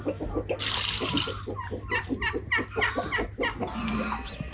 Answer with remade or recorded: recorded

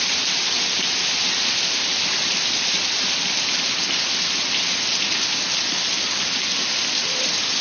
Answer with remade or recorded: recorded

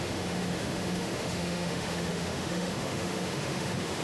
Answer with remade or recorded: remade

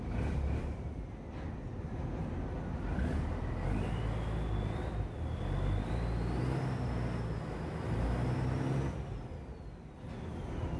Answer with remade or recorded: recorded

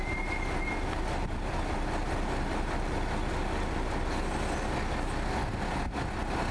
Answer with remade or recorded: recorded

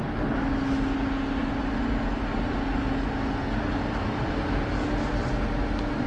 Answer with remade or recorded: recorded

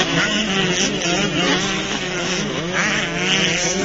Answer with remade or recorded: remade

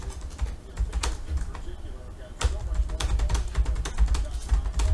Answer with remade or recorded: recorded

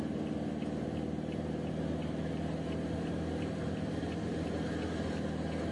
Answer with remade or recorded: recorded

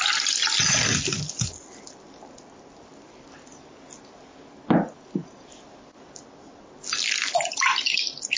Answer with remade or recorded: recorded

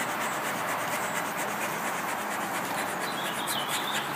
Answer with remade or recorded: recorded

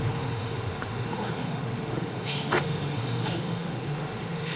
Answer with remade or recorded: remade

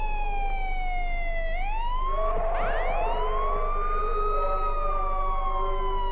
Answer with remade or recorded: recorded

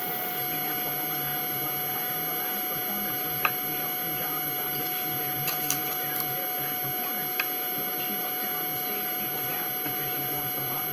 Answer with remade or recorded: recorded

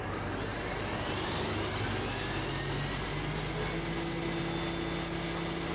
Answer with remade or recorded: recorded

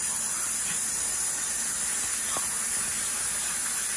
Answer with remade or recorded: recorded